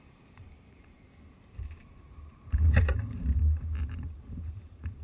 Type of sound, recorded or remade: remade